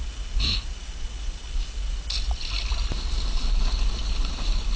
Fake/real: real